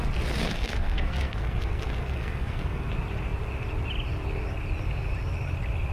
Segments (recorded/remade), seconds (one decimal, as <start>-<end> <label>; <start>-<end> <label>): 0.0-0.4 recorded; 0.4-2.9 remade; 2.9-5.9 recorded